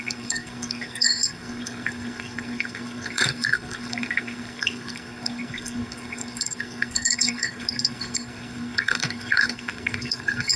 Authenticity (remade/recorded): remade